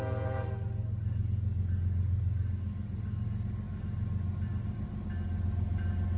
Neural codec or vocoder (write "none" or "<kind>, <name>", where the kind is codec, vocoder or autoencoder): none